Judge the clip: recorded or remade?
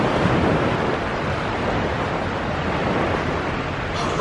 recorded